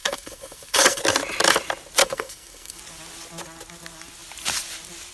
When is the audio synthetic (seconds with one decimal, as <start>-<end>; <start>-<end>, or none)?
0.0-1.0; 2.0-2.8